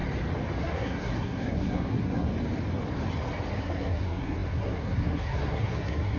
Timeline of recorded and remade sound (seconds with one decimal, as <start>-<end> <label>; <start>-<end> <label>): 0.0-0.6 recorded; 0.6-2.3 remade; 2.3-3.6 recorded; 3.6-6.2 remade